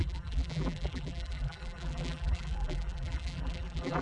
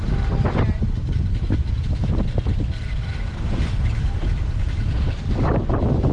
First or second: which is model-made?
first